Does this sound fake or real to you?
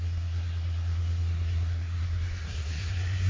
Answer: fake